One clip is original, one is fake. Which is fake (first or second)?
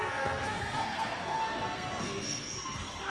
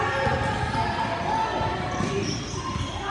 first